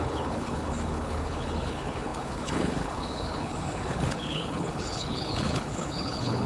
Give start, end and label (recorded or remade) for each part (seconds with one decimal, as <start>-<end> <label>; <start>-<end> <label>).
0.0-6.5 remade

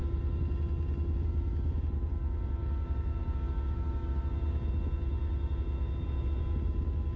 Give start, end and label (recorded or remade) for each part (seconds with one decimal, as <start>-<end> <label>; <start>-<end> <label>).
0.0-7.2 recorded